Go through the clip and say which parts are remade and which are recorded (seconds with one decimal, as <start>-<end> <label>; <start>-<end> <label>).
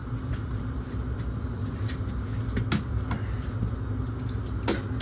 0.0-1.7 remade; 1.7-5.0 recorded